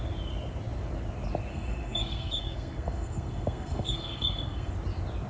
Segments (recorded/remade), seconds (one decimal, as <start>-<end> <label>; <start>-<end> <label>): 0.0-1.5 recorded; 1.5-4.7 remade; 4.7-5.3 recorded